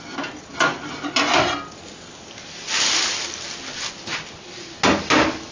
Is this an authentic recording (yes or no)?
yes